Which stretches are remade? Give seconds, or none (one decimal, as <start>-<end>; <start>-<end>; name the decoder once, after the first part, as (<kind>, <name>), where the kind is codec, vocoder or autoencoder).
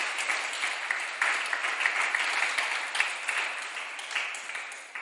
none